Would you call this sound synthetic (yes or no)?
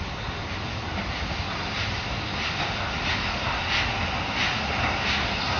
no